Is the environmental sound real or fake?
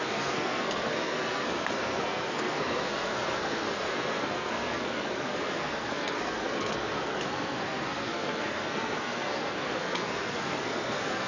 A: fake